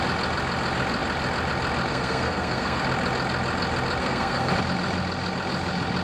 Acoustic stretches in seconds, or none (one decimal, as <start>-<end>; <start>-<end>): 0.0-1.9; 2.8-4.0; 4.5-6.0